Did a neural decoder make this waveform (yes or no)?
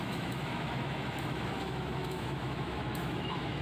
yes